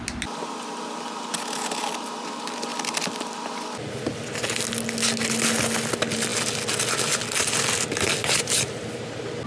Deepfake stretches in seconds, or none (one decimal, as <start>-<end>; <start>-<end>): none